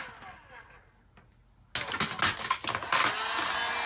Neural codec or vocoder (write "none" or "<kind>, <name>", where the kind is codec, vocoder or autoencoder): none